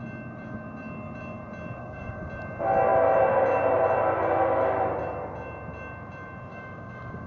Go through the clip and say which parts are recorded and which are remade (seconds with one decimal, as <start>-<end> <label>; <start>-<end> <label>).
0.0-1.8 recorded; 1.8-2.3 remade; 2.3-6.5 recorded; 6.5-7.3 remade